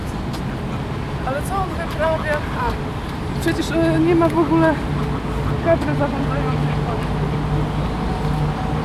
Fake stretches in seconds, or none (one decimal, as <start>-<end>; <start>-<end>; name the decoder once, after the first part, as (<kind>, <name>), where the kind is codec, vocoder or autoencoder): none